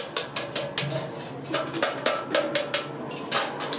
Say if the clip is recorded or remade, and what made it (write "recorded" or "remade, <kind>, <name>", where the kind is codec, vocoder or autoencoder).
recorded